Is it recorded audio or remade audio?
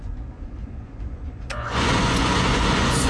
remade